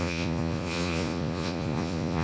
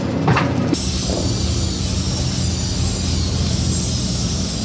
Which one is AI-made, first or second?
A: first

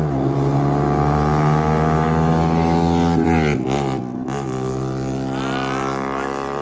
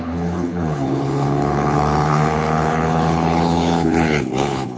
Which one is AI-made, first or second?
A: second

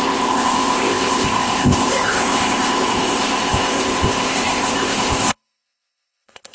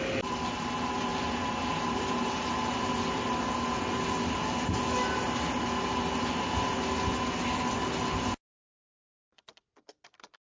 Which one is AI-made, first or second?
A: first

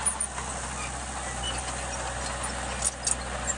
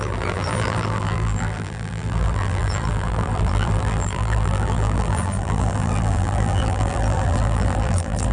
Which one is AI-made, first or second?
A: second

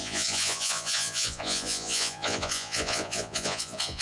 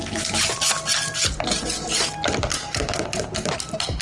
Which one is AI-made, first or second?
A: first